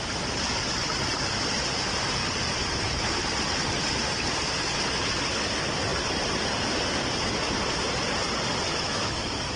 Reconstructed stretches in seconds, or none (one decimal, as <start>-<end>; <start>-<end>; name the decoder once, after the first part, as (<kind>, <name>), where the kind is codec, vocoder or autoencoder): 8.7-9.6 (autoencoder, DAC-VAE)